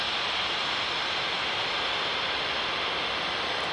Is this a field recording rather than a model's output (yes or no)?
yes